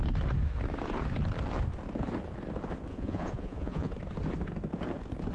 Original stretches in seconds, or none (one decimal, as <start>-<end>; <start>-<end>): 0.0-2.9; 3.9-5.3